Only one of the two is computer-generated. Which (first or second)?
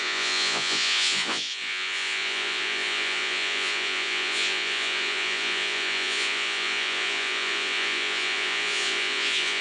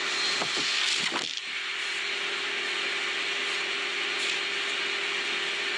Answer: first